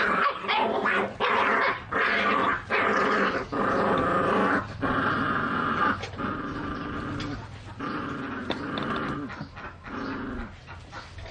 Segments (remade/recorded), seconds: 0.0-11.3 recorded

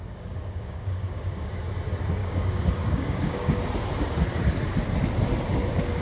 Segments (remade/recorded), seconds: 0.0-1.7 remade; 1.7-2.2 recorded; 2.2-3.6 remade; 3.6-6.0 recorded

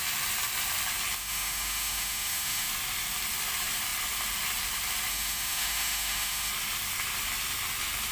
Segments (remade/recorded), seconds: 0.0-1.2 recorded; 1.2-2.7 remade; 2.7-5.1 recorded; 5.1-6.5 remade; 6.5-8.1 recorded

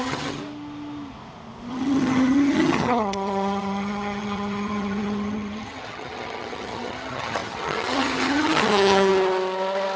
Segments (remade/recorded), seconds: 0.0-0.4 remade; 0.4-1.7 recorded; 1.7-9.1 remade; 9.1-10.0 recorded